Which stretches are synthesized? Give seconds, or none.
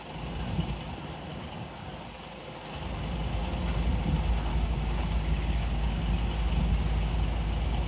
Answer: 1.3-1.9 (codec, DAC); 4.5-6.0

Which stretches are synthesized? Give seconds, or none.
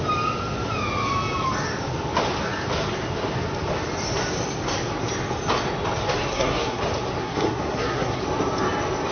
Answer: 6.3-6.8 (codec, SNAC); 7.2-8.2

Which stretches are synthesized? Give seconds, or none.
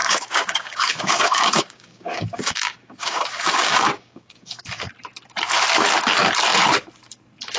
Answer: 0.0-4.6 (codec, DAC)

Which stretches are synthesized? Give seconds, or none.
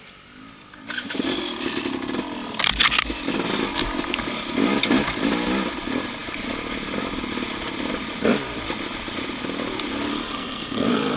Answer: 10.1-11.2 (codec, SNAC)